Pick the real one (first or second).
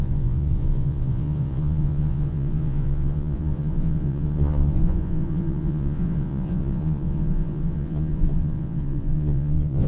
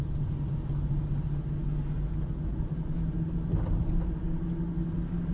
second